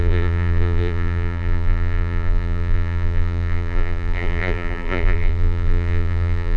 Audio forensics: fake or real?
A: fake